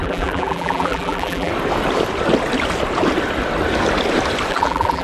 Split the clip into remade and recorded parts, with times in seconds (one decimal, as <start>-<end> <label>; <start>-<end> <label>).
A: 0.0-1.5 remade; 1.5-4.5 recorded; 4.5-5.0 remade